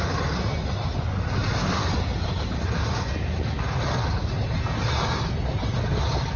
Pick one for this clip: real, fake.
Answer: real